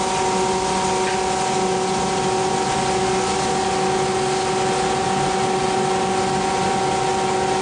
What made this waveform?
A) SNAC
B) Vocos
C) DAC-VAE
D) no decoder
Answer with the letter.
D